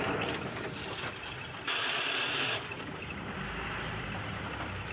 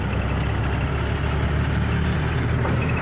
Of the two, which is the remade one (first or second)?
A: first